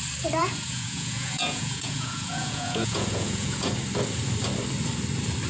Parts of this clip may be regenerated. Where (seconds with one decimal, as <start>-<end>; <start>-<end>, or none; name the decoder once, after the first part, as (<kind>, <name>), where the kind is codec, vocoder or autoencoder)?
0.4-3.7 (vocoder, Vocos)